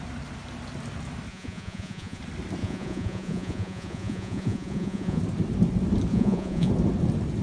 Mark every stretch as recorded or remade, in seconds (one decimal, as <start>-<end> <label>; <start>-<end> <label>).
0.0-1.3 recorded; 1.3-2.2 remade; 2.2-2.6 recorded; 2.6-5.2 remade; 5.2-6.1 recorded; 6.1-6.7 remade; 6.7-7.4 recorded